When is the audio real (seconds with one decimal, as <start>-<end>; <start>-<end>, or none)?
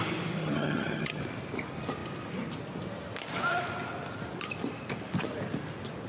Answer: 0.0-0.4; 1.2-6.1